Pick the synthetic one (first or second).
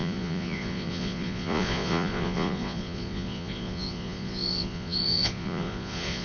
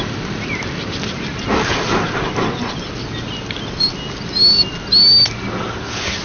first